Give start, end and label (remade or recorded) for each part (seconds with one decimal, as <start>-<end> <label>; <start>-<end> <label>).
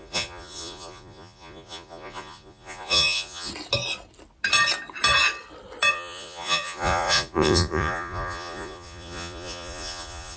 0.0-3.5 remade; 3.5-5.9 recorded; 5.9-10.4 remade